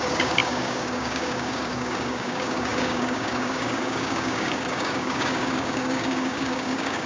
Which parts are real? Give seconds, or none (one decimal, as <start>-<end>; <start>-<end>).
none